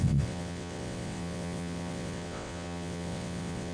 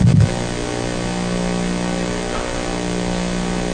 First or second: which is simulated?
first